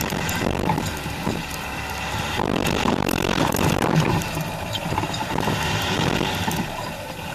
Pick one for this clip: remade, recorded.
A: remade